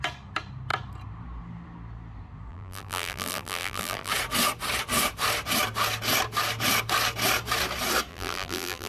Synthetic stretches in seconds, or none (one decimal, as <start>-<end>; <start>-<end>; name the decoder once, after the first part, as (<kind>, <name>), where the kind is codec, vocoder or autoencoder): 2.5-4.1 (vocoder, BigVGAN v2); 8.1-8.9